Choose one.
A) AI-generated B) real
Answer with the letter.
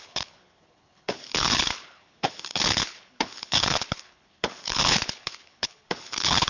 A